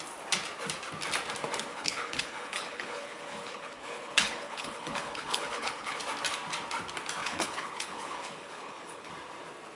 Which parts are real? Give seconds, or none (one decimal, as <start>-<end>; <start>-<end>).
0.0-1.7; 6.0-7.2; 9.1-9.8